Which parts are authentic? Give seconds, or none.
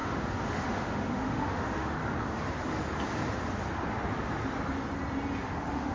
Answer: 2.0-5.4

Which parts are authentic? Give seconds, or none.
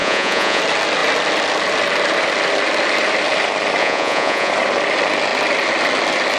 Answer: 0.6-3.8; 4.5-6.4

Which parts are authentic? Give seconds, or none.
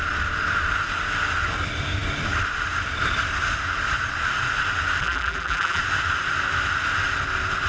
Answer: 0.0-5.0; 5.8-7.7